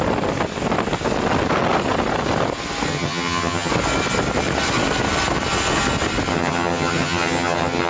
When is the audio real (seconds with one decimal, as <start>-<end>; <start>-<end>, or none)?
0.0-2.9; 3.7-6.3